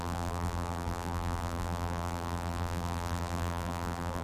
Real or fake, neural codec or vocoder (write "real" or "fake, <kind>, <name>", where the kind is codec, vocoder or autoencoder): fake, vocoder, BigVGAN v2